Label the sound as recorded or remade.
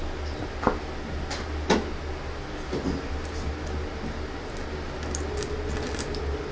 recorded